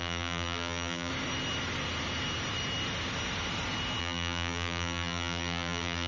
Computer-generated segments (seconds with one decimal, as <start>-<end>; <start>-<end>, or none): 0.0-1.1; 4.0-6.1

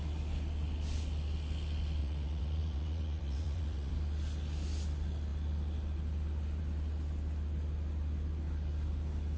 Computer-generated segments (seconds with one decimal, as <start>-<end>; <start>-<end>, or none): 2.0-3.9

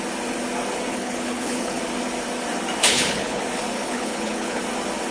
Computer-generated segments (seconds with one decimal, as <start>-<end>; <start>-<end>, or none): 0.9-1.8; 2.8-3.4; 3.8-4.6

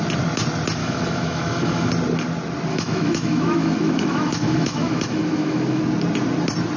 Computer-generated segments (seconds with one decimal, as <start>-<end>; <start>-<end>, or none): 0.8-1.9; 2.7-5.8

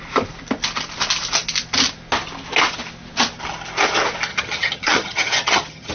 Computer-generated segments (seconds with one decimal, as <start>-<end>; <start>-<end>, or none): 4.3-5.9

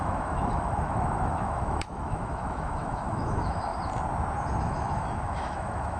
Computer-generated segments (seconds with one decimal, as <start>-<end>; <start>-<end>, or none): 0.0-3.7; 4.6-6.0

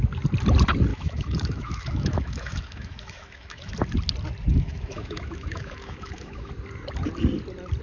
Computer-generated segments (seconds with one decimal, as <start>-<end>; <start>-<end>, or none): 0.9-3.7; 4.5-6.5

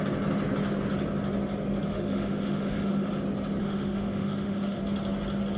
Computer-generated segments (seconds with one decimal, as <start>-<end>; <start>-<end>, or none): 1.9-3.2; 3.6-4.8